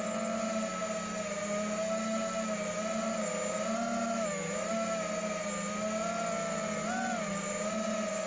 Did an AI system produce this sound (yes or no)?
no